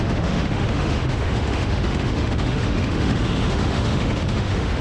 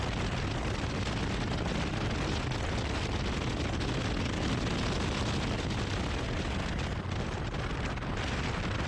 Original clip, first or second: second